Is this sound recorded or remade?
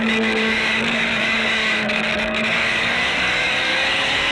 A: remade